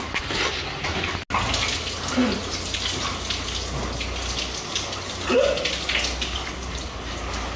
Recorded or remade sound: recorded